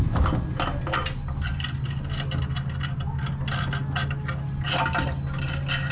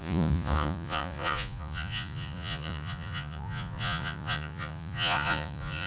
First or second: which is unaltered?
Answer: first